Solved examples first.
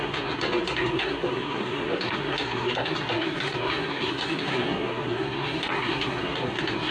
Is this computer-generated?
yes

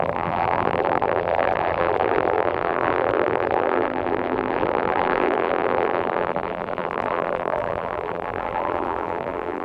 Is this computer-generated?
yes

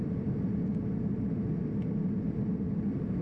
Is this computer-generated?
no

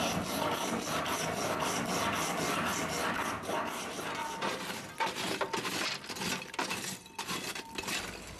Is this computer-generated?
no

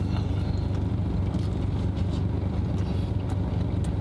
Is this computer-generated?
no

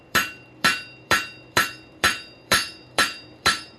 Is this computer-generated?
yes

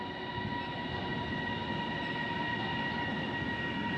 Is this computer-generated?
no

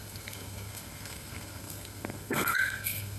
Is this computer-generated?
yes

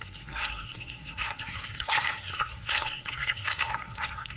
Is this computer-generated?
yes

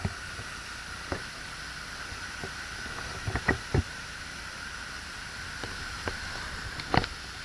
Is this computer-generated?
no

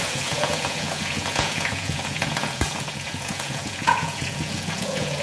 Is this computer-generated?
yes